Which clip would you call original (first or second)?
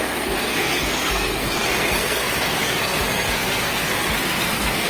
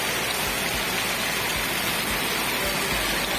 second